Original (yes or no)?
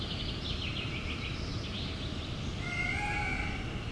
yes